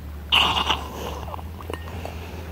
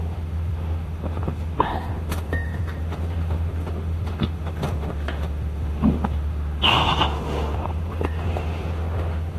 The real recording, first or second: first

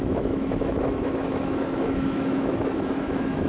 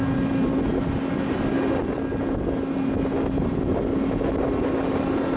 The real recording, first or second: second